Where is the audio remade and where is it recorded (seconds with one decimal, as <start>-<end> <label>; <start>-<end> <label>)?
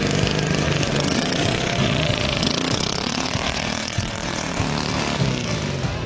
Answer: 0.0-0.9 recorded; 0.9-4.6 remade; 4.6-6.1 recorded